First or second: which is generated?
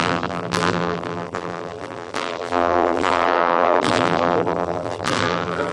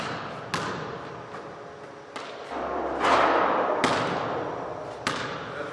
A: first